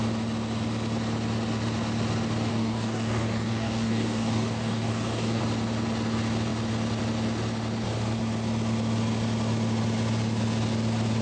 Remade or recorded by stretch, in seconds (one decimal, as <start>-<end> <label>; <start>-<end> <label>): 0.0-2.5 recorded; 2.5-5.4 remade; 5.4-11.2 recorded